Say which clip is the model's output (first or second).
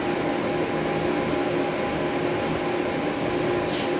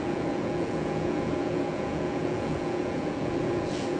second